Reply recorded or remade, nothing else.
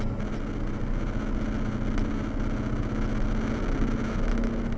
recorded